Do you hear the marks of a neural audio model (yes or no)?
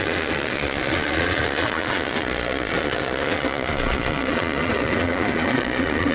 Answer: yes